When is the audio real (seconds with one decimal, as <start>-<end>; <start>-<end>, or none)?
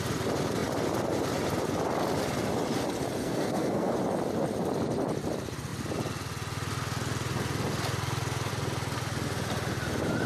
0.0-3.2; 3.9-10.3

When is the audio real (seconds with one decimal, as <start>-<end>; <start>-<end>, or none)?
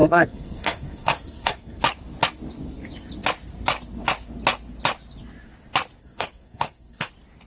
1.8-6.0; 7.1-7.5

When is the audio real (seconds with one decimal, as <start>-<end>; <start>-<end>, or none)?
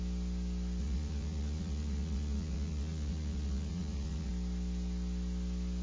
0.0-0.8; 4.3-5.8